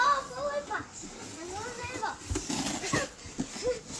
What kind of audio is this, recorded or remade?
recorded